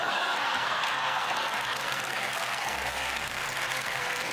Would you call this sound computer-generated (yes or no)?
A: yes